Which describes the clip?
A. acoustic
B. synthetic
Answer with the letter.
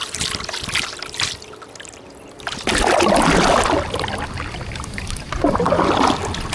A